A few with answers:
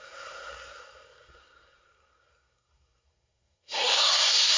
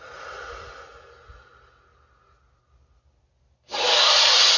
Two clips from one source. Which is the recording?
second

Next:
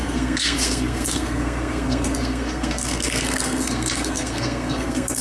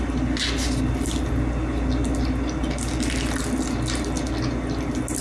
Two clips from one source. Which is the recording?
second